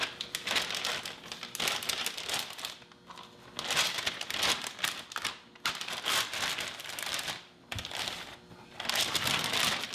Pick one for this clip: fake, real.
real